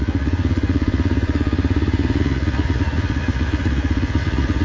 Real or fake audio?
fake